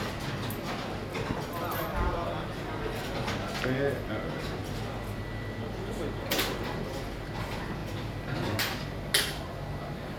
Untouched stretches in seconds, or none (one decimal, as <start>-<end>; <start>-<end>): 0.0-10.2